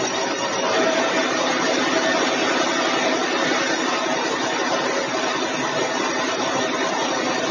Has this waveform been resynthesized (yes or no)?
no